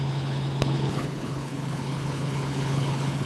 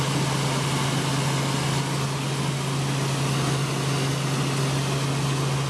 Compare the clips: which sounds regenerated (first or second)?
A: first